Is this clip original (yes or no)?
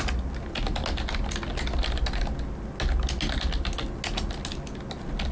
yes